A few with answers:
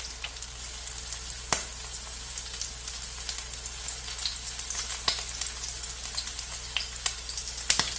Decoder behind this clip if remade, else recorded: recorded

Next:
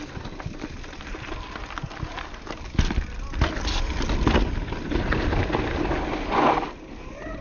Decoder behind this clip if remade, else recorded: recorded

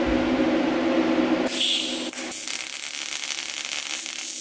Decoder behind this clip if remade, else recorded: recorded